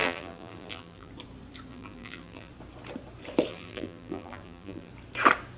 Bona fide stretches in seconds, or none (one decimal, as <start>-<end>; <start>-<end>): 1.1-1.7; 2.5-3.5; 4.9-5.6